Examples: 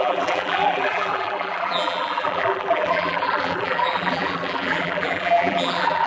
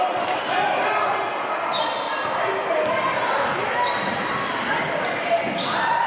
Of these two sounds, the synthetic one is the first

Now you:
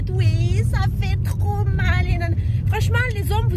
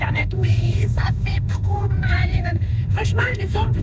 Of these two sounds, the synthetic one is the second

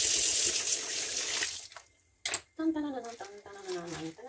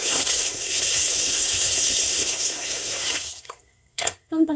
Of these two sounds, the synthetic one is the second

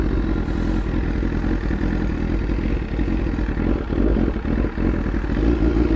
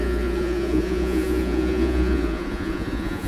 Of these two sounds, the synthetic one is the second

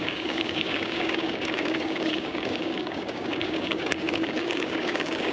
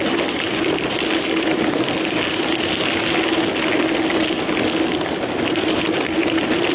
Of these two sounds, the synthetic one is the first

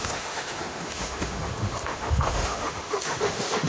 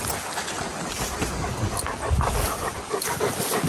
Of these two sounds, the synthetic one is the first